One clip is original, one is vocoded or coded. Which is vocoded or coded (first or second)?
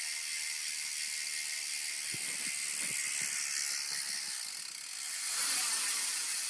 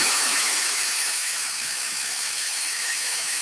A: second